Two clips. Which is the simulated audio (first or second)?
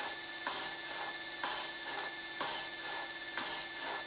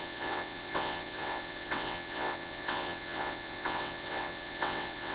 second